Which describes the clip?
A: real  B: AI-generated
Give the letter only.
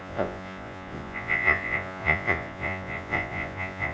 B